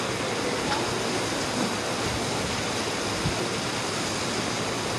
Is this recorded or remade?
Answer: recorded